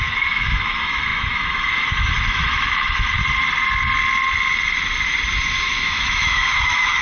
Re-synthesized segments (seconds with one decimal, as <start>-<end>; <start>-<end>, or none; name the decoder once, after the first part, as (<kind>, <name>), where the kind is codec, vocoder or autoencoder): 0.0-3.2 (autoencoder, DAC-VAE); 5.6-7.0